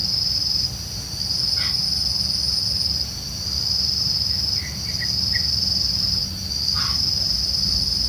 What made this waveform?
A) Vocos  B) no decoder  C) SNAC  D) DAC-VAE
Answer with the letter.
B